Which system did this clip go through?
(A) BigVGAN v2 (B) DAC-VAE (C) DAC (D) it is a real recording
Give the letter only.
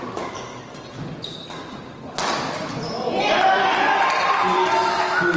D